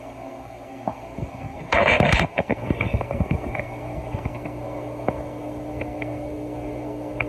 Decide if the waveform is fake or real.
fake